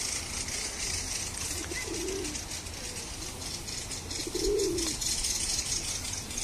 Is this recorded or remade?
recorded